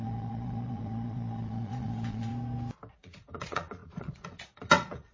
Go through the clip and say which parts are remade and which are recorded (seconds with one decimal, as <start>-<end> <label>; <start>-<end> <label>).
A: 0.0-2.3 remade; 2.3-2.9 recorded; 2.9-5.1 remade